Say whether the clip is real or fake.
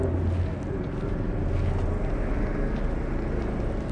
real